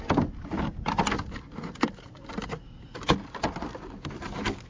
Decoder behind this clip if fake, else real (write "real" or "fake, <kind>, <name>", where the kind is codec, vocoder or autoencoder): real